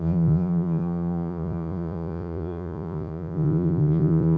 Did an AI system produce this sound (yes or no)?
yes